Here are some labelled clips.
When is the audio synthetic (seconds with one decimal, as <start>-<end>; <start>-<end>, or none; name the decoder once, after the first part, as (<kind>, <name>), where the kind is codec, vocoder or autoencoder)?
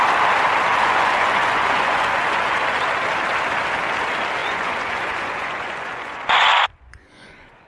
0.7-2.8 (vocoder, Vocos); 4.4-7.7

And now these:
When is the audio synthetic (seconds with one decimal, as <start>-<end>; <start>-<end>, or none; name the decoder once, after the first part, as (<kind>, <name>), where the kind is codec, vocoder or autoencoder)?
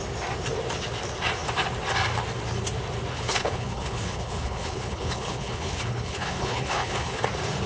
3.1-7.2 (codec, HILCodec)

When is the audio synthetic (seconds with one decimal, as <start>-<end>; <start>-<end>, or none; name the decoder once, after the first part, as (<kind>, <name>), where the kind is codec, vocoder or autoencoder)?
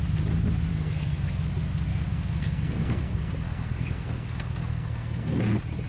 0.7-1.3 (codec, SNAC); 1.9-5.4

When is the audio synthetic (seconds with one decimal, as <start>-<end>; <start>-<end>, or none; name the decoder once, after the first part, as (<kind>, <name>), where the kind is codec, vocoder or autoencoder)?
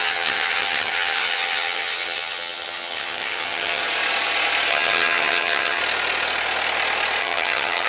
0.0-3.8 (vocoder, HiFi-GAN); 4.7-5.8; 7.2-7.9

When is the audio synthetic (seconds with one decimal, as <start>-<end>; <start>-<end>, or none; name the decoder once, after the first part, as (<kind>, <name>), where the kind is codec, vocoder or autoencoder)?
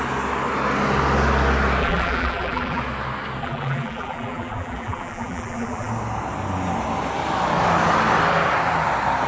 1.8-2.8 (vocoder, BigVGAN v2); 3.4-5.9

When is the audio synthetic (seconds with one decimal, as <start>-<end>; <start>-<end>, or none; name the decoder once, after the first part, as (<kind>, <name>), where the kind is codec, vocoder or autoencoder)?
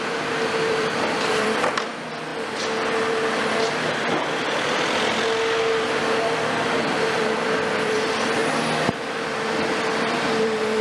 0.0-2.3 (vocoder, BigVGAN v2); 3.1-8.4; 9.1-10.8